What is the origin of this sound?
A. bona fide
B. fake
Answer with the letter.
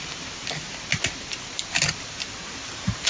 A